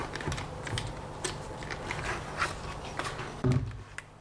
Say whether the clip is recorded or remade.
recorded